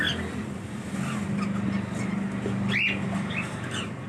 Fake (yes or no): no